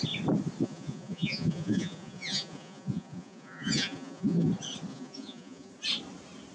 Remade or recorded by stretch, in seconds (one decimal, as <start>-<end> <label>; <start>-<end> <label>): 0.0-0.6 recorded; 0.6-4.5 remade; 4.5-4.9 recorded; 4.9-5.7 remade; 5.7-6.5 recorded